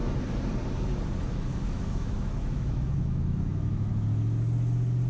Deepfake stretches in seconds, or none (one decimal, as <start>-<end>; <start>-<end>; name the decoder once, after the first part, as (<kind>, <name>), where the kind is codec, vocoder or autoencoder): 1.3-3.9 (autoencoder, DAC-VAE)